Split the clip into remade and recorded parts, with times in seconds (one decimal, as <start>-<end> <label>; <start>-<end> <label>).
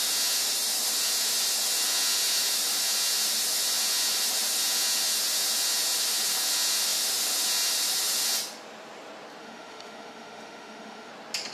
0.0-9.4 recorded; 9.4-11.1 remade; 11.1-11.5 recorded